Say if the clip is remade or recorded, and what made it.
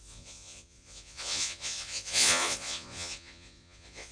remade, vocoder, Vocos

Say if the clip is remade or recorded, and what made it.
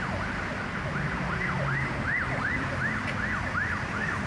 recorded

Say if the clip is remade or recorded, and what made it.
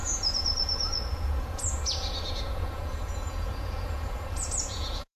remade, vocoder, Vocos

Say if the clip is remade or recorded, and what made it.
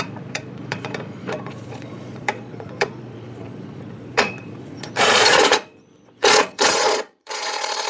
remade, vocoder, Vocos